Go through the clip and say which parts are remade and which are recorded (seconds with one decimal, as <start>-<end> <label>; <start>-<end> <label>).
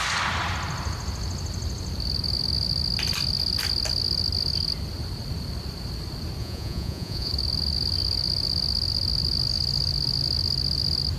0.0-6.4 recorded; 6.4-7.3 remade; 7.3-11.2 recorded